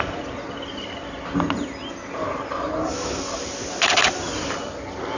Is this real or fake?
real